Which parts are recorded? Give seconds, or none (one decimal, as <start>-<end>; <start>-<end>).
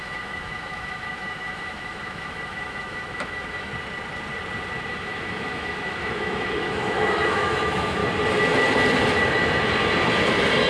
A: 3.7-4.9; 8.0-10.7